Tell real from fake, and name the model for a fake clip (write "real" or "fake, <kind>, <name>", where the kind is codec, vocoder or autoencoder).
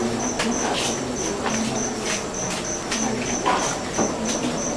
real